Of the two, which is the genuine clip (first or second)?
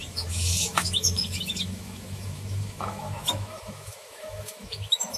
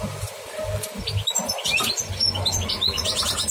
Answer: second